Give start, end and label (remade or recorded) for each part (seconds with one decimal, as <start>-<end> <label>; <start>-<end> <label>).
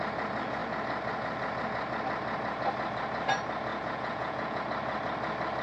0.0-3.7 recorded; 3.7-4.6 remade; 4.6-5.6 recorded